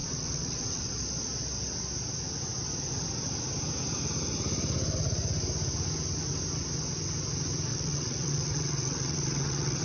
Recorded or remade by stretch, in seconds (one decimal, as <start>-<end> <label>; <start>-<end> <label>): 0.0-0.9 remade; 0.9-7.7 recorded; 7.7-9.8 remade